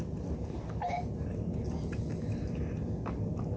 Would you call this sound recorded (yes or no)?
yes